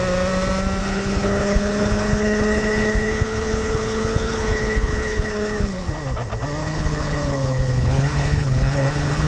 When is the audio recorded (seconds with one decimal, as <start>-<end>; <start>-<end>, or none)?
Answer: 0.0-0.8; 5.9-6.6